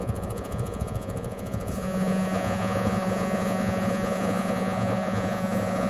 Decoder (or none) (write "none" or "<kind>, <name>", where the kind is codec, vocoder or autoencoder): vocoder, Vocos